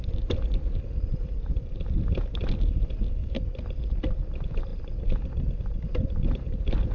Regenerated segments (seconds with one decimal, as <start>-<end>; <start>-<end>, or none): none